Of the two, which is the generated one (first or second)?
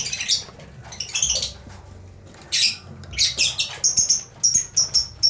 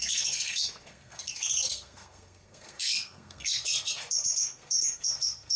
second